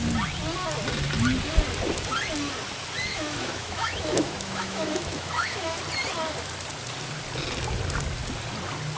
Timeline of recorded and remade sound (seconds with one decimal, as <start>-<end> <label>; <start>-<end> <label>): 0.0-3.1 recorded; 3.1-5.8 remade; 5.8-9.0 recorded